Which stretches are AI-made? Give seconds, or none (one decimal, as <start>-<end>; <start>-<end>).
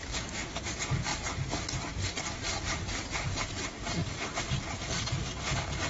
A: 0.0-0.5